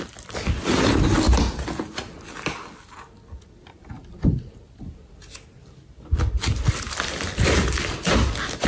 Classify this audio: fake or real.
real